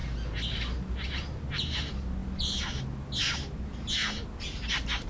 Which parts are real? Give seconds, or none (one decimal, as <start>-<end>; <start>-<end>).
0.0-5.1